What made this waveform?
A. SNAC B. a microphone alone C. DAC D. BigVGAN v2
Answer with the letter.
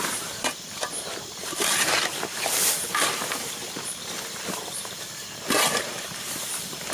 D